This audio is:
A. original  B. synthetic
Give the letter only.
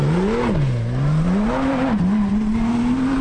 A